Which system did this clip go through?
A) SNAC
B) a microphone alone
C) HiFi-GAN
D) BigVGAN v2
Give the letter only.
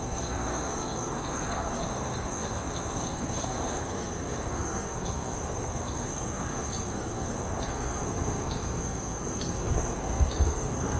A